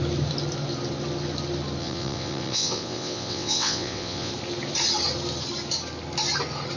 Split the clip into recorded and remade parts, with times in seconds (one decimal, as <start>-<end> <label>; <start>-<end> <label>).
0.0-1.8 recorded; 1.8-4.3 remade; 4.3-6.8 recorded